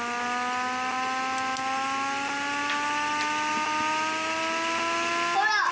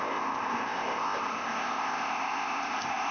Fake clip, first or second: second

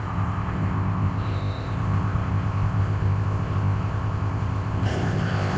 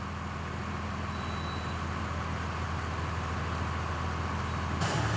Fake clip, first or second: first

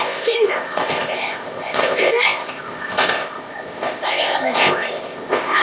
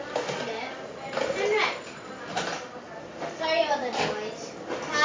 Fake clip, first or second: first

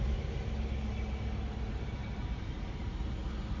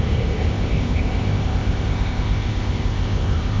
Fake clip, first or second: second